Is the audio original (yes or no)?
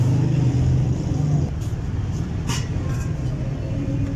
yes